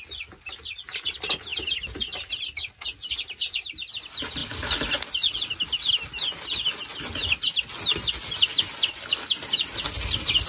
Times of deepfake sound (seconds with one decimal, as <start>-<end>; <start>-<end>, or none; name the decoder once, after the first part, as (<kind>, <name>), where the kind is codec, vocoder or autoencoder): 4.4-5.1 (vocoder, BigVGAN v2)